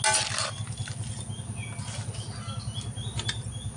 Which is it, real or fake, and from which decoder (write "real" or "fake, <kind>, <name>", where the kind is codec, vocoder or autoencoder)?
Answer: real